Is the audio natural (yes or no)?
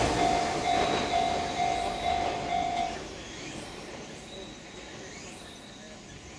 no